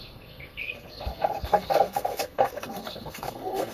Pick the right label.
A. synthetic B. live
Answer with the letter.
A